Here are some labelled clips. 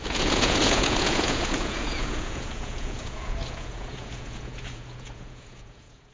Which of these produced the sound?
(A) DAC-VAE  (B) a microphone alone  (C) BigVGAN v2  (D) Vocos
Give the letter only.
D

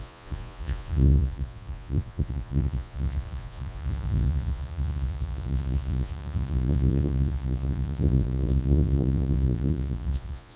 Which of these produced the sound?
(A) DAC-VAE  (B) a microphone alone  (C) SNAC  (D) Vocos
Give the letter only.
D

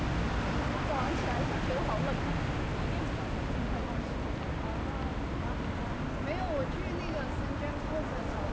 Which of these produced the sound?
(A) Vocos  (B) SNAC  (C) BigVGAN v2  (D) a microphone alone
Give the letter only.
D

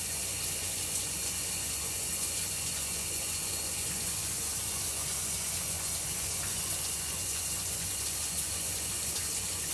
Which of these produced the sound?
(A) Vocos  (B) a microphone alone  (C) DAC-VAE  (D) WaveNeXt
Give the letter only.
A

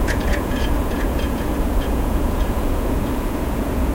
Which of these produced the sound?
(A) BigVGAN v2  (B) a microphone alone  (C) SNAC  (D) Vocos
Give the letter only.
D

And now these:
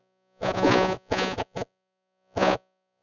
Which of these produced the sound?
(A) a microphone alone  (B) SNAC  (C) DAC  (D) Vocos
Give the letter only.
D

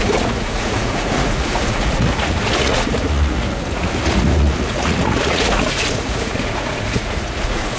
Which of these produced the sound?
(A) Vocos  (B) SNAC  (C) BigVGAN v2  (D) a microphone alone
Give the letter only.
A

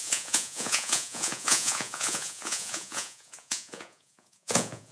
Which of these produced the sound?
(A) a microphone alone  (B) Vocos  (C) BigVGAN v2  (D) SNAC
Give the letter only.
B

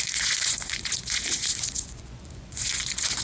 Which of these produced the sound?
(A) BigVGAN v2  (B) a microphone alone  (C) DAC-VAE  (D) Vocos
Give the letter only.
D